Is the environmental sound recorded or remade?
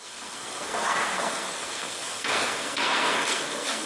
remade